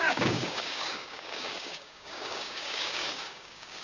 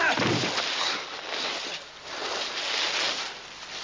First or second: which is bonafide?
second